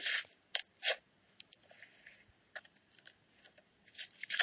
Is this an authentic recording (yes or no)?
yes